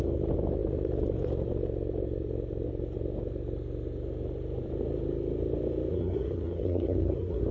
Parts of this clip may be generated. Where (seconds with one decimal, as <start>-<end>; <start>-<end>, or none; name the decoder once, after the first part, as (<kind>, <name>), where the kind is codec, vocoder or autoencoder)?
5.9-7.5 (codec, SNAC)